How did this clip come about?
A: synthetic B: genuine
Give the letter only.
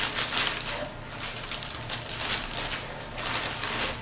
B